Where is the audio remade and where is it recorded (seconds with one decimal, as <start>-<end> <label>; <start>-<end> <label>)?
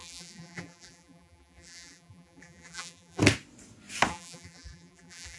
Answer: 0.0-3.2 remade; 3.2-4.1 recorded; 4.1-5.4 remade